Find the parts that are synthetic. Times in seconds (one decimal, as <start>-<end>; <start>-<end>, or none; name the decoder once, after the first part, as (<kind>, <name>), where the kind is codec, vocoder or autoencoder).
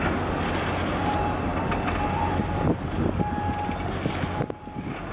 none